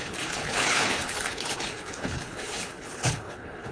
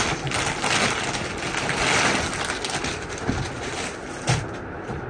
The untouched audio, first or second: second